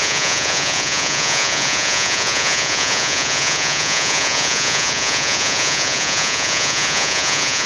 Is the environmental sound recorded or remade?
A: remade